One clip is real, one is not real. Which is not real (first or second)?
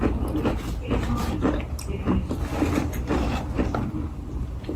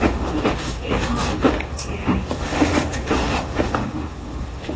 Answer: second